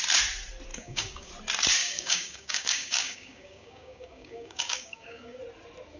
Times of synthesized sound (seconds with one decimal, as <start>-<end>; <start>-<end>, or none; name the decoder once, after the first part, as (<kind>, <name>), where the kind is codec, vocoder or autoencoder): 0.7-1.3 (codec, DAC); 1.8-5.4